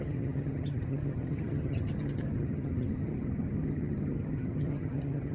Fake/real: fake